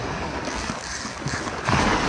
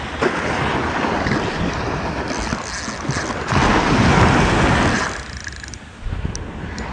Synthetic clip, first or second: first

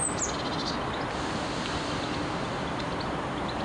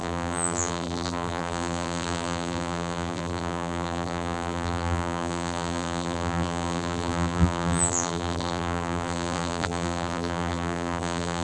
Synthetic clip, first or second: second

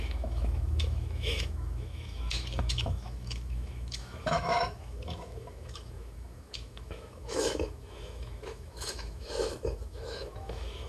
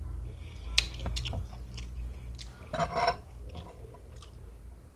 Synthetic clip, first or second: first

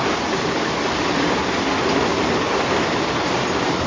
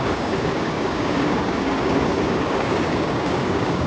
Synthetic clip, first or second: second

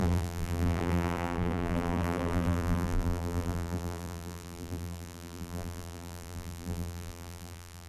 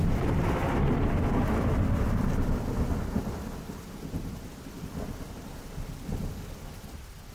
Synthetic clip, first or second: first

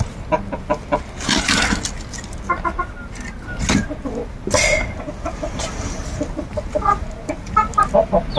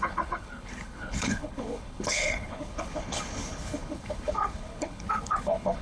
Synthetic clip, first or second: second